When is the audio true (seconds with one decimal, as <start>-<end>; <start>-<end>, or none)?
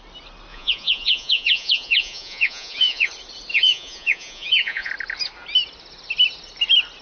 0.0-0.5; 3.1-3.5; 4.9-7.0